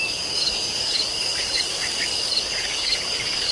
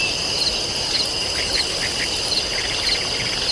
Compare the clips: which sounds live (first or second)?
second